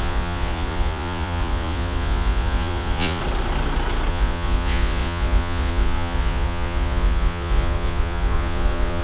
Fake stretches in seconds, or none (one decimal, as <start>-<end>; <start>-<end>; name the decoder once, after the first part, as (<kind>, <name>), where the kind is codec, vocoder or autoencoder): 0.0-3.2 (vocoder, Vocos); 4.1-9.0